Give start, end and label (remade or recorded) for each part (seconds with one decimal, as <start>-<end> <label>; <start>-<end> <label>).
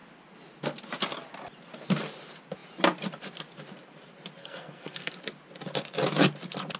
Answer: 0.0-4.4 recorded; 4.4-5.1 remade; 5.1-6.8 recorded